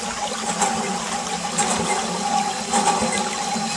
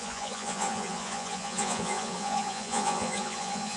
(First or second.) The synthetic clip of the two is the second